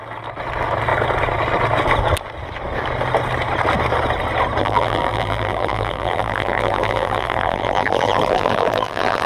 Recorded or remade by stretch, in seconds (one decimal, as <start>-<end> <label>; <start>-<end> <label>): 0.0-4.6 recorded; 4.6-9.3 remade